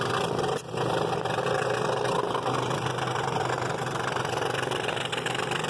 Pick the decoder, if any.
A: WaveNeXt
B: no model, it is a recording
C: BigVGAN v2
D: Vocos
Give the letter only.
B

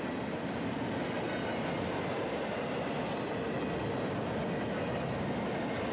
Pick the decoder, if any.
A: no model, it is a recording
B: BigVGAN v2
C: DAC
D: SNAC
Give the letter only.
A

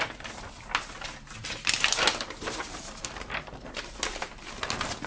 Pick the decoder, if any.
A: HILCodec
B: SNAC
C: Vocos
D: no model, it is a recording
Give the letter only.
D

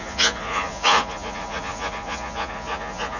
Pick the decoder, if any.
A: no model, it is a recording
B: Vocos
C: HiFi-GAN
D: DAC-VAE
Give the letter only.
B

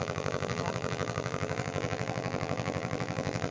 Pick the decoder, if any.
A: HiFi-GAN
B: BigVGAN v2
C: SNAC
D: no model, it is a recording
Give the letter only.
B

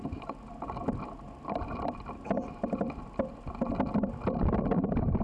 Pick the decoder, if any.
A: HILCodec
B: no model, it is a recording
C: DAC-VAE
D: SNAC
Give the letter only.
B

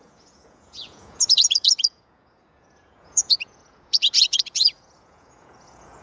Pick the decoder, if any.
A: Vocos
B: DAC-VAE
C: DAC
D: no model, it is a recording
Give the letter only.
A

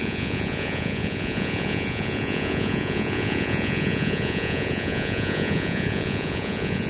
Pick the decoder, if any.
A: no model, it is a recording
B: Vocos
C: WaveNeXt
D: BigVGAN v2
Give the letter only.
B